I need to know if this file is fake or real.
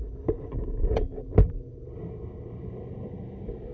fake